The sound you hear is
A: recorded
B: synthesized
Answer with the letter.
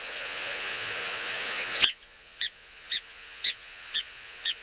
B